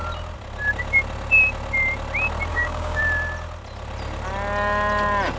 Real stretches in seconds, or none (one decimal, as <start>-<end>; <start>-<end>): 0.0-2.5; 3.0-5.4